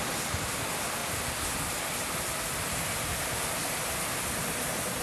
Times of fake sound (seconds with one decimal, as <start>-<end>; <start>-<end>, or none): 0.0-5.0